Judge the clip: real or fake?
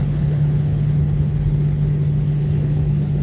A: fake